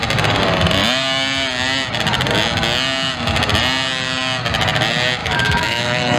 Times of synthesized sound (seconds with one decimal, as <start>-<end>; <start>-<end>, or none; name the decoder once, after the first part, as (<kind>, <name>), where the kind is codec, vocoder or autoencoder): 5.2-6.2 (autoencoder, DAC-VAE)